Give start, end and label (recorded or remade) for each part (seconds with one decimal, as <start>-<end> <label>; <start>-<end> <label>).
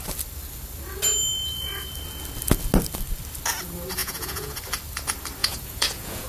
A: 0.0-4.0 recorded; 4.0-4.6 remade; 4.6-5.4 recorded; 5.4-6.3 remade